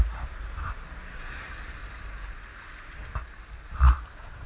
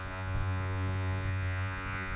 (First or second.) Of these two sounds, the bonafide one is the first